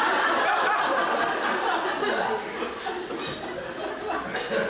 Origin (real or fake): real